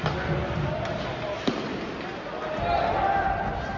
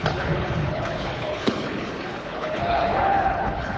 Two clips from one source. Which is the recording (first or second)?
first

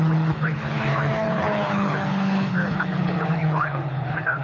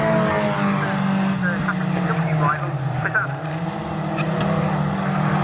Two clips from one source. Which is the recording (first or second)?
second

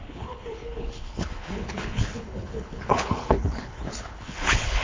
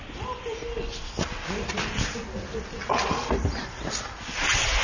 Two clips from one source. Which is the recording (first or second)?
second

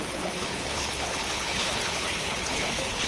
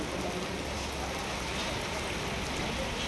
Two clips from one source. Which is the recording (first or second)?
second